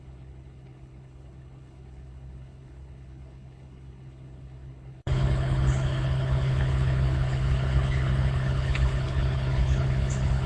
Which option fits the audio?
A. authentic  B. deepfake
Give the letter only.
B